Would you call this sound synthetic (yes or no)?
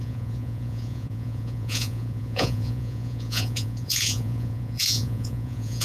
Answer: yes